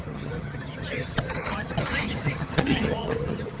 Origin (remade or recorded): remade